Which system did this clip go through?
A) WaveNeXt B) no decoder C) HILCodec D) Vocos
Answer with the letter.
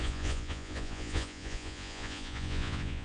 D